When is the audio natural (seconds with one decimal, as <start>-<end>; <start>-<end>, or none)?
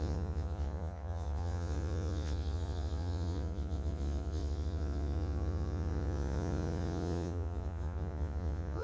none